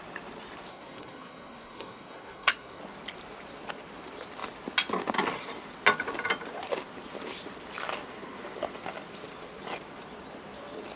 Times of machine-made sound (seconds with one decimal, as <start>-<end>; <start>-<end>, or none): 0.7-2.8